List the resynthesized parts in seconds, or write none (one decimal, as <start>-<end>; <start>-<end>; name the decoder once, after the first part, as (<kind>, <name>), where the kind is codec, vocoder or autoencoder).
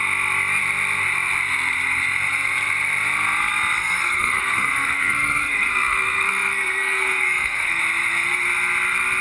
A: 3.8-7.8 (codec, SNAC)